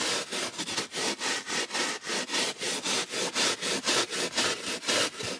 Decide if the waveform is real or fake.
real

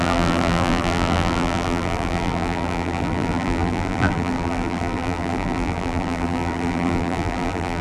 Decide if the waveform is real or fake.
fake